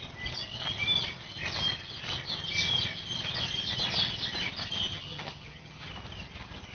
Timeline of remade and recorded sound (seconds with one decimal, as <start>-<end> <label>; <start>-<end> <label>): 0.0-4.9 recorded; 4.9-5.9 remade; 5.9-6.7 recorded